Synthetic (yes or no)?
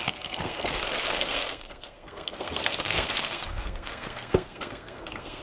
yes